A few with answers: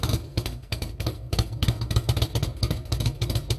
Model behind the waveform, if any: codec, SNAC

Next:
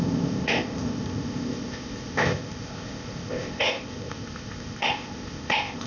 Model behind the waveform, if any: codec, ZipCodec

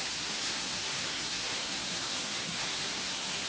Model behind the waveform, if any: codec, SNAC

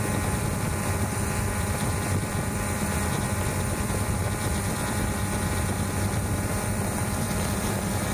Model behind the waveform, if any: vocoder, BigVGAN v2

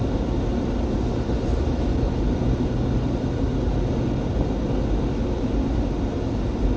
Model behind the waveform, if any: none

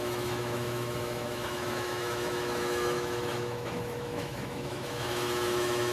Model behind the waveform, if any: autoencoder, DAC-VAE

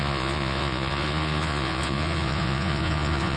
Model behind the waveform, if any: vocoder, Vocos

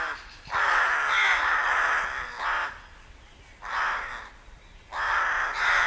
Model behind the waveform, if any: none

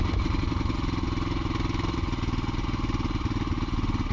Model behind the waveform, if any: none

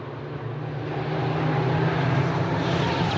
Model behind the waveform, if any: none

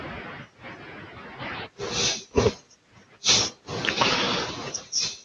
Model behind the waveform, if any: none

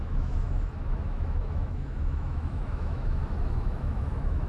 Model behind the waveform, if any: autoencoder, DAC-VAE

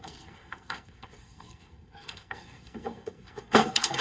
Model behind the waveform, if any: codec, SNAC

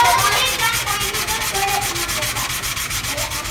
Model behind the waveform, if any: none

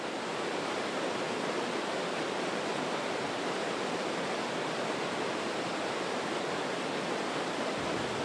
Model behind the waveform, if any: vocoder, BigVGAN v2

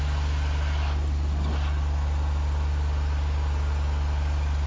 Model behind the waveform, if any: none